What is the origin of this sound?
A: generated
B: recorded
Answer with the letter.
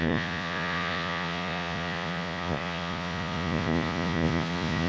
A